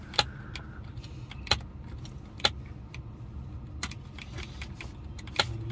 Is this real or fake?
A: real